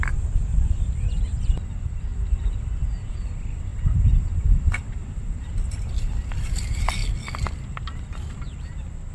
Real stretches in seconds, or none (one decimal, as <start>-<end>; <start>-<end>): 2.1-3.1; 7.0-9.1